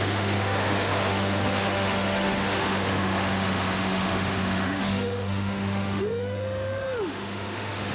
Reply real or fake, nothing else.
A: fake